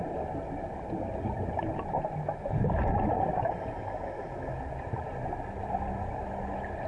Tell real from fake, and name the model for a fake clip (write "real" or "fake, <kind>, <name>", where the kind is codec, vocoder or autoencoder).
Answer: real